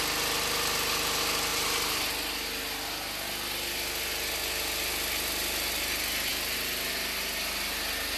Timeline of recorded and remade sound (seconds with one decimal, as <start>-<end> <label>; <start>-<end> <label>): 0.0-1.5 recorded; 1.5-2.1 remade; 2.1-8.2 recorded